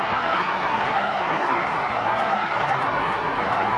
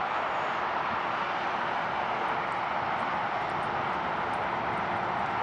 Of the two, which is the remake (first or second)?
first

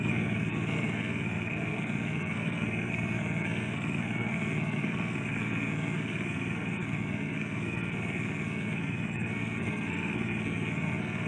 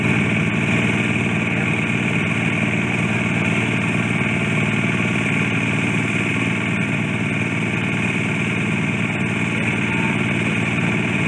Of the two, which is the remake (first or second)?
first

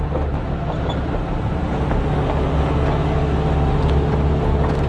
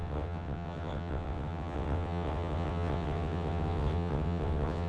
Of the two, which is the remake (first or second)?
second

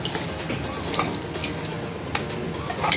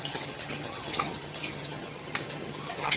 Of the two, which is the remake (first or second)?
second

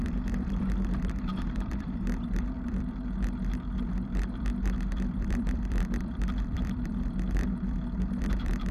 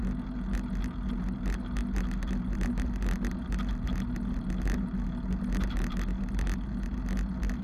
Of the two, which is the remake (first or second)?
first